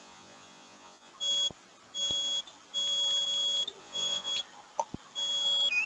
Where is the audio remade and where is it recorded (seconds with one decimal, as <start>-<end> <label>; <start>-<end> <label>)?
0.0-1.1 remade; 1.1-3.8 recorded; 3.8-4.3 remade; 4.3-5.9 recorded